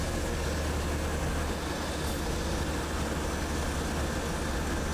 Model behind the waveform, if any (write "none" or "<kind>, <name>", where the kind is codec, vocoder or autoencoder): none